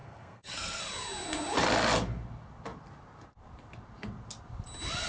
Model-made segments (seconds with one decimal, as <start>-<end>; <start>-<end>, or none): 0.0-0.8